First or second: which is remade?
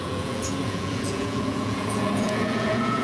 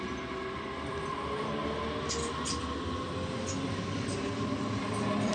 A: first